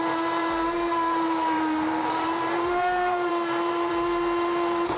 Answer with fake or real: fake